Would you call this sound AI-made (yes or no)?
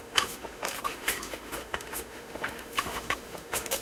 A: yes